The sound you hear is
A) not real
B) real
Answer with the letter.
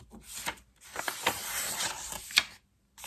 B